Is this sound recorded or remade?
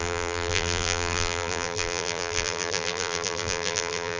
remade